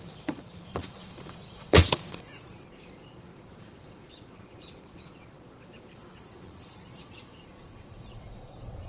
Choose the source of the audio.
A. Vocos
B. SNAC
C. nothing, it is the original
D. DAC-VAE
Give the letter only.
A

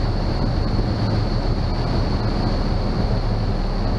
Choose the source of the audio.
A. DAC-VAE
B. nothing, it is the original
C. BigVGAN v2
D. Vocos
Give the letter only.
B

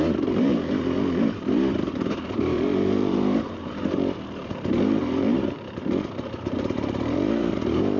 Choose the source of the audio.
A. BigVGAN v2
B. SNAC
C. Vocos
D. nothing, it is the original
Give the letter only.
A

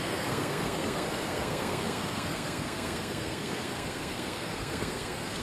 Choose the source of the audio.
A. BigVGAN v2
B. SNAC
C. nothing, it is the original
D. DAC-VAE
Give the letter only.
B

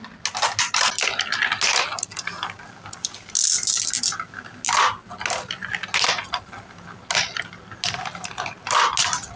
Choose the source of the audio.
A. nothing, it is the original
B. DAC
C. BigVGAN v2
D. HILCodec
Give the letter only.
A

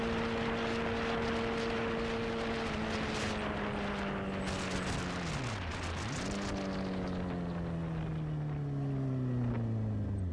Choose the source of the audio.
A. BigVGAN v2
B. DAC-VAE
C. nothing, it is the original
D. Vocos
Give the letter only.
C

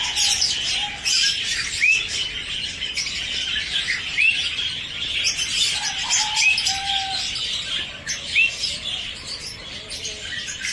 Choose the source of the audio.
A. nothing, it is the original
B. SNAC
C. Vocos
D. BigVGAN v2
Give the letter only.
A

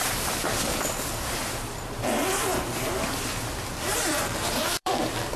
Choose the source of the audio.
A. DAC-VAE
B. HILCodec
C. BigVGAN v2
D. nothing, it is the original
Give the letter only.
C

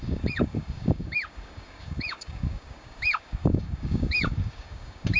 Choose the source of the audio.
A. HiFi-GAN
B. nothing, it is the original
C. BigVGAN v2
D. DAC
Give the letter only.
D